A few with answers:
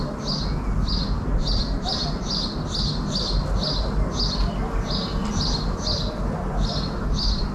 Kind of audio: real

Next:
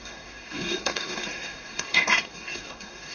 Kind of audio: fake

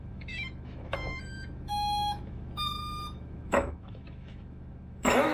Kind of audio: fake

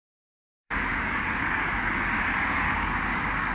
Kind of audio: fake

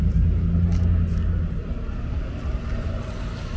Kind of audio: real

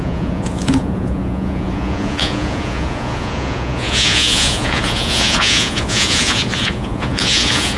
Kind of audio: fake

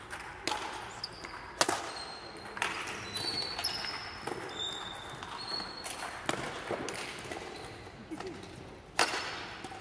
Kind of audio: real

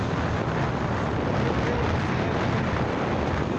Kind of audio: real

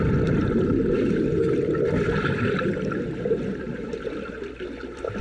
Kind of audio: fake